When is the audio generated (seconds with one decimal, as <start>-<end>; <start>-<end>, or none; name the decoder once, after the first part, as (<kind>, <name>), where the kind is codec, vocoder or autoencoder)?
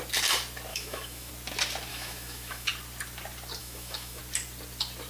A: 0.7-1.3 (autoencoder, DAC-VAE); 1.9-2.7; 3.6-4.2